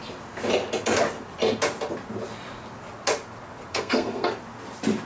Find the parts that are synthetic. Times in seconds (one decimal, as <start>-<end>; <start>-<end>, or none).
3.7-4.3